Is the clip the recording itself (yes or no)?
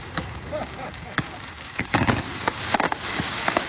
no